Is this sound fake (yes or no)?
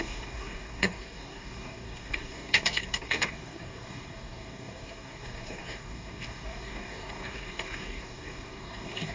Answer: yes